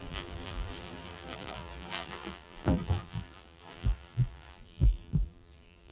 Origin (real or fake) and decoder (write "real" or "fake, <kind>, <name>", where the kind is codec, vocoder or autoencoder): fake, vocoder, BigVGAN v2